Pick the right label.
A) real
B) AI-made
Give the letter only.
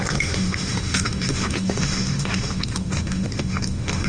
B